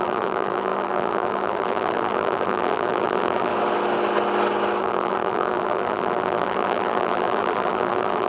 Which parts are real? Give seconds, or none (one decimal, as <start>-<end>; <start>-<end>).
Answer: 3.5-4.8